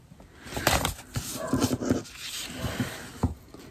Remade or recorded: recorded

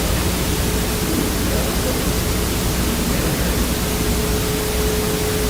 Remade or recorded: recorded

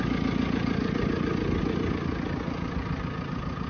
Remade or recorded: recorded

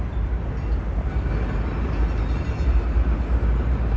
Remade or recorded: recorded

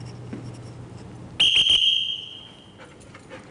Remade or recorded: recorded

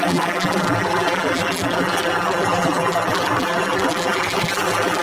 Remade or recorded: remade